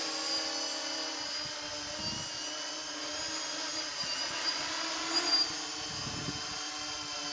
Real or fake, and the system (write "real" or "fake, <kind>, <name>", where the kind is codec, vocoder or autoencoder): real